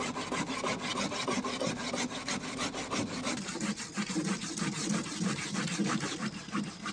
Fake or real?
real